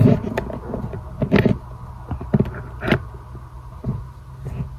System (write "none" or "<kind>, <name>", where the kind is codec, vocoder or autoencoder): none